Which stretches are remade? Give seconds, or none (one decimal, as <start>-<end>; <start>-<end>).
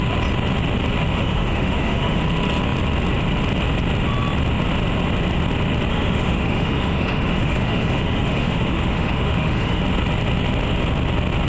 1.1-2.2; 5.9-9.8